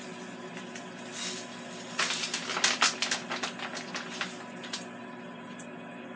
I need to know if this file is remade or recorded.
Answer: recorded